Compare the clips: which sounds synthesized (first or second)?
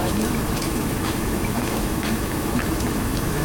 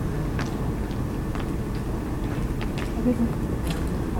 first